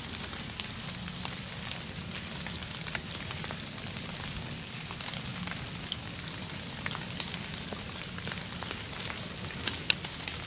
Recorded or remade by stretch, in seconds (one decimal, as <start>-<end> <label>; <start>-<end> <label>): 0.0-10.5 recorded

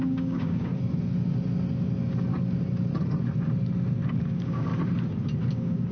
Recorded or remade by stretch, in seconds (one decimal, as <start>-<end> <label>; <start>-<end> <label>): 0.0-0.7 remade; 0.7-4.2 recorded; 4.2-4.7 remade; 4.7-5.5 recorded; 5.5-5.9 remade

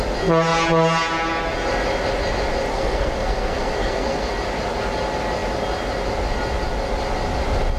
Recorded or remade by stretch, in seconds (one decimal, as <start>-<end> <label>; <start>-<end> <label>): 0.0-2.7 recorded; 2.7-4.3 remade; 4.3-7.8 recorded

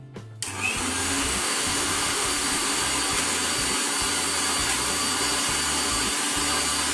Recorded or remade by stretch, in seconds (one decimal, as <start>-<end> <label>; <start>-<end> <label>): 0.0-1.0 recorded; 1.0-2.8 remade; 2.8-6.9 recorded

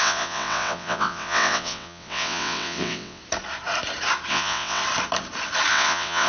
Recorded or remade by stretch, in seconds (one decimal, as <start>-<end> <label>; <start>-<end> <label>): 0.0-3.2 remade; 3.2-4.3 recorded; 4.3-4.8 remade; 4.8-5.7 recorded; 5.7-6.3 remade

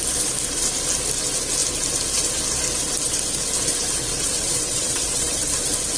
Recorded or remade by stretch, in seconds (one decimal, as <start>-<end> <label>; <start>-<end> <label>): 0.0-4.1 recorded; 4.1-5.5 remade; 5.5-6.0 recorded

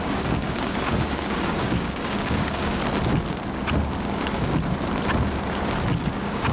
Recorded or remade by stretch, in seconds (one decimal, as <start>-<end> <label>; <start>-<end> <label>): 0.0-2.8 remade; 2.8-3.8 recorded; 3.8-4.5 remade; 4.5-5.9 recorded; 5.9-6.5 remade

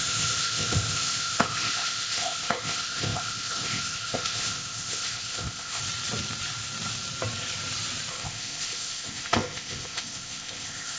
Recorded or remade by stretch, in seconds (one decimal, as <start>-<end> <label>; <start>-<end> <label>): 0.0-5.8 remade; 5.8-8.1 recorded; 8.1-11.0 remade